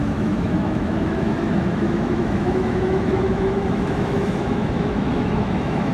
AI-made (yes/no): yes